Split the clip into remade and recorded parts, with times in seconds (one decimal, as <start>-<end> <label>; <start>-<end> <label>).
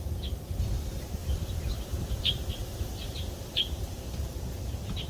0.0-1.2 recorded; 1.2-4.3 remade; 4.3-5.1 recorded